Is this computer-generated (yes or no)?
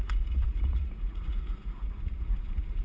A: yes